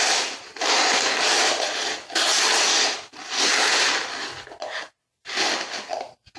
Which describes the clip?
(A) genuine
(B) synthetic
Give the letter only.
A